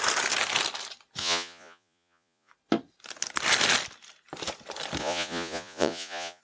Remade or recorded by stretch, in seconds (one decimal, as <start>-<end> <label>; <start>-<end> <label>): 0.0-1.2 recorded; 1.2-2.5 remade; 2.5-5.0 recorded; 5.0-6.4 remade